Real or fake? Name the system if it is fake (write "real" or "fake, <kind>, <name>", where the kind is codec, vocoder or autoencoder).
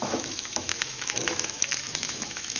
fake, autoencoder, DAC-VAE